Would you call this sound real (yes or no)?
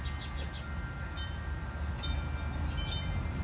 yes